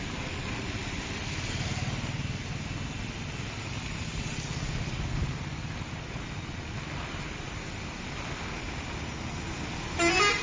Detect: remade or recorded recorded